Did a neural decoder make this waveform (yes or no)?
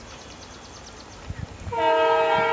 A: no